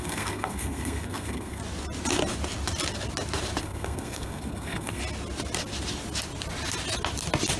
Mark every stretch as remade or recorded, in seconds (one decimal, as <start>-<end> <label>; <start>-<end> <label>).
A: 0.0-1.6 remade; 1.6-3.6 recorded; 3.6-5.0 remade; 5.0-7.6 recorded